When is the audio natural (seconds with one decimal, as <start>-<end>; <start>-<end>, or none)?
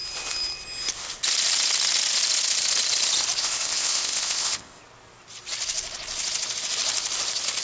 0.0-3.4; 4.8-7.6